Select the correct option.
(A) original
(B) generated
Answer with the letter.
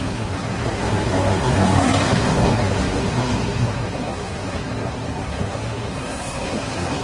B